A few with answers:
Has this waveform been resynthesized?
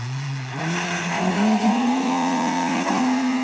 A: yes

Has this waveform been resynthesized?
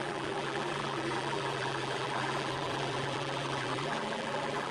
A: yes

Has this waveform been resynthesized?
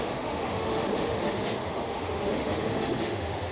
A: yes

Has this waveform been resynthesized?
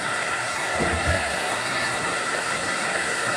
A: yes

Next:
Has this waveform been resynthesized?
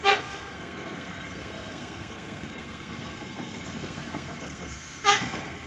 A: yes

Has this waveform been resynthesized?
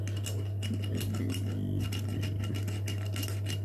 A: no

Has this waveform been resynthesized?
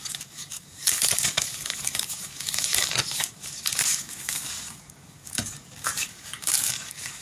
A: yes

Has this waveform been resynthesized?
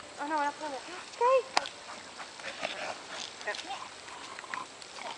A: no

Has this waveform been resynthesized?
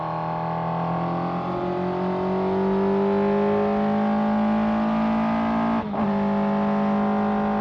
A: no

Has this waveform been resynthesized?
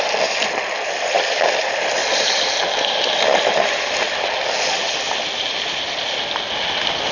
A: no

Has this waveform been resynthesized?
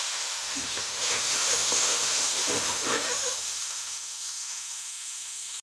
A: yes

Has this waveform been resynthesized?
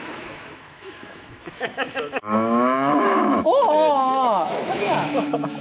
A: yes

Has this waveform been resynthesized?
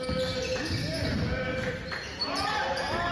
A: no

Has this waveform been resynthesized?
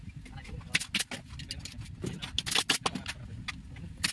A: no